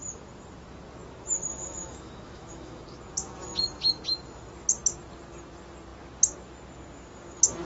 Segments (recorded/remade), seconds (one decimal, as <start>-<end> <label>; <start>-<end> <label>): 0.0-1.5 recorded; 1.5-2.8 remade; 2.8-7.6 recorded